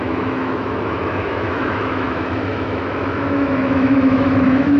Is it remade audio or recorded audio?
remade